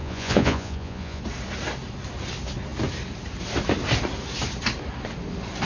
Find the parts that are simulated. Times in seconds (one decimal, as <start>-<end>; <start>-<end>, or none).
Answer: 0.0-1.2